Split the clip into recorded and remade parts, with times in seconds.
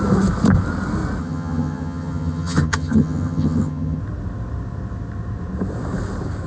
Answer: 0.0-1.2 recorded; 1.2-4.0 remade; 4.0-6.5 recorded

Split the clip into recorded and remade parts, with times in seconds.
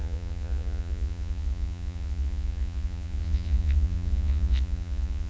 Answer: 0.0-5.3 remade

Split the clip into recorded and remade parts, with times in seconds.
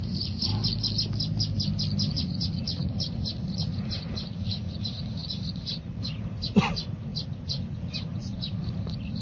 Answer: 0.0-0.5 remade; 0.5-2.1 recorded; 2.1-9.2 remade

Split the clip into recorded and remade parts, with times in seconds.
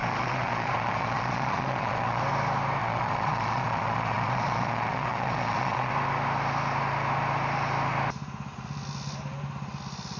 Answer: 0.0-2.2 remade; 2.2-2.8 recorded; 2.8-5.9 remade; 5.9-10.2 recorded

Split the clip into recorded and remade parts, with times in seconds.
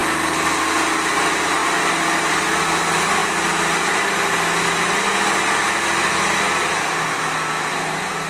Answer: 0.0-8.3 recorded